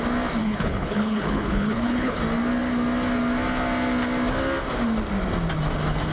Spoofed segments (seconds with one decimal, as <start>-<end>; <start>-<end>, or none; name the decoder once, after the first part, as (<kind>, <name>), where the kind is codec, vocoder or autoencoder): 0.4-2.2 (codec, HILCodec)